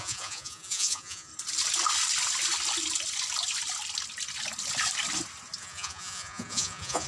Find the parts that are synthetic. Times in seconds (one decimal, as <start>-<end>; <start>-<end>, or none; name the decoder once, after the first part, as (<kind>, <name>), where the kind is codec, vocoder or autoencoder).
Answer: 0.0-1.3 (vocoder, Vocos); 5.6-7.1